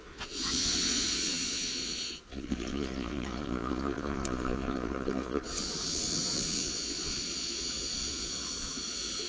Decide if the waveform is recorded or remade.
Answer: remade